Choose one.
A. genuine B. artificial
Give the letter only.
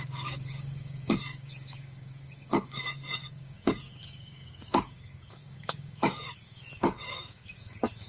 B